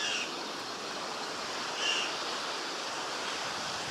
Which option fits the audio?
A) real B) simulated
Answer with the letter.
A